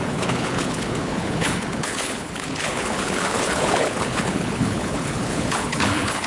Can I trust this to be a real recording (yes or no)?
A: no